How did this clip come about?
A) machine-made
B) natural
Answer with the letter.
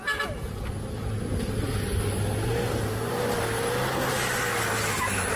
B